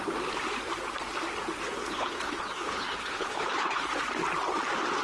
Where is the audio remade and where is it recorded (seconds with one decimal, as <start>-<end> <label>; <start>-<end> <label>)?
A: 0.0-1.8 recorded; 1.8-3.9 remade; 3.9-5.0 recorded